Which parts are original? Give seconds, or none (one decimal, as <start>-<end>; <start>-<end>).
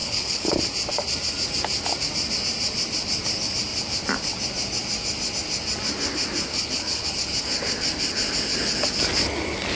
0.6-6.5; 7.1-9.7